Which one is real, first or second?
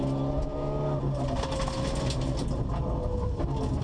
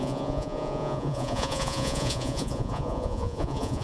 first